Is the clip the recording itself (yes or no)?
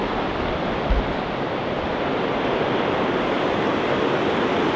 yes